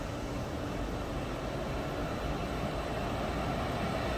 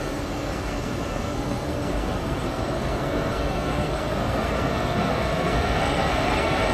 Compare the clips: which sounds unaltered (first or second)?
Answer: first